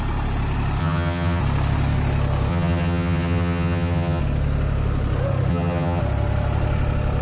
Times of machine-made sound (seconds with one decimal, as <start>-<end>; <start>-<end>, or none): 0.8-1.4; 2.5-4.2; 5.5-6.0